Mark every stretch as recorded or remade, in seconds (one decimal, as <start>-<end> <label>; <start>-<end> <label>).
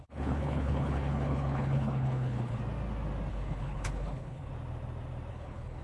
0.0-2.6 remade; 2.6-3.3 recorded; 3.3-4.5 remade; 4.5-5.3 recorded; 5.3-5.8 remade